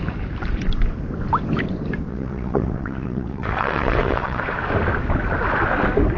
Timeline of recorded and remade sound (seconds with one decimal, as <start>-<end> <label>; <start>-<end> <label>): 0.0-2.1 recorded; 2.1-4.4 remade; 4.4-6.2 recorded